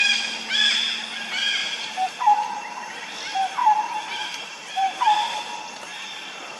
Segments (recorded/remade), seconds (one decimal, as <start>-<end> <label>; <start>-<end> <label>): 0.0-1.6 recorded; 1.6-3.0 remade; 3.0-3.6 recorded; 3.6-6.6 remade